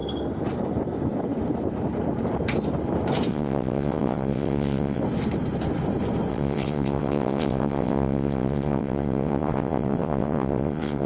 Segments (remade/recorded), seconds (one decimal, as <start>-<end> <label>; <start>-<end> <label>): 0.0-3.3 recorded; 3.3-5.0 remade; 5.0-6.3 recorded; 6.3-11.1 remade